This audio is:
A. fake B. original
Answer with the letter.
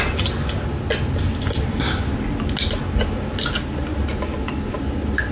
B